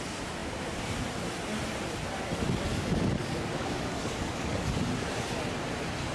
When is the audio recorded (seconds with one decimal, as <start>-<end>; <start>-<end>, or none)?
0.0-2.7; 4.8-6.1